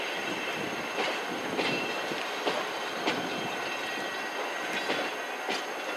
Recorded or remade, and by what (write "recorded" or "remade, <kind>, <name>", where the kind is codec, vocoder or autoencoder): remade, vocoder, BigVGAN v2